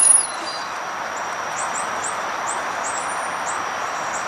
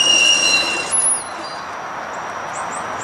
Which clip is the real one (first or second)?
second